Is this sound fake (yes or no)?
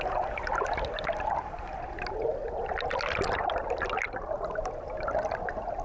no